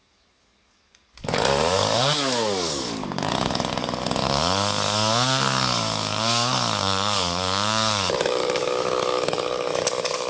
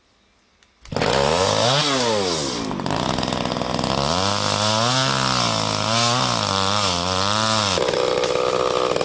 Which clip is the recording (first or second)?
second